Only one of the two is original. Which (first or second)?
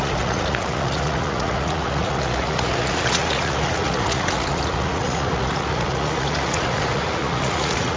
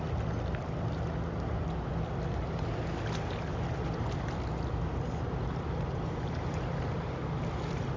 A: second